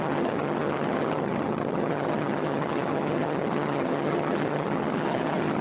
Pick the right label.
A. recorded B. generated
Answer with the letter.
B